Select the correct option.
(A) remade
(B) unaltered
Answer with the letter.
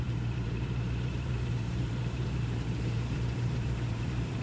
A